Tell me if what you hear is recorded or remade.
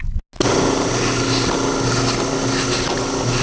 recorded